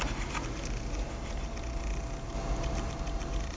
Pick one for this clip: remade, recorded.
recorded